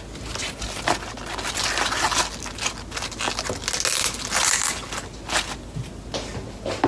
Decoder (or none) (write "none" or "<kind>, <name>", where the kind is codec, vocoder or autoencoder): none